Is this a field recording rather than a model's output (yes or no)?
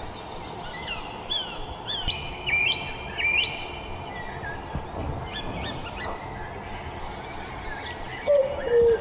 yes